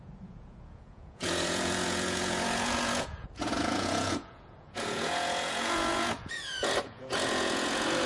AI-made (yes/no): yes